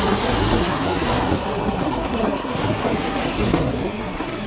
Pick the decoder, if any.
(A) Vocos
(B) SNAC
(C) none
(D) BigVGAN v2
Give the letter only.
B